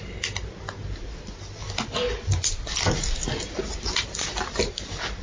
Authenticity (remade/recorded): recorded